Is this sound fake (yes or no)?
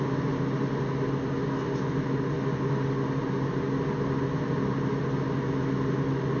no